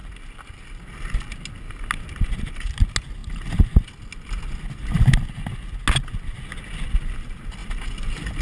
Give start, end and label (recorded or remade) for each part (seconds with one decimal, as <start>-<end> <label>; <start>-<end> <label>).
0.0-8.4 recorded